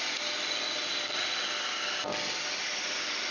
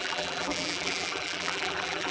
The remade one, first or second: second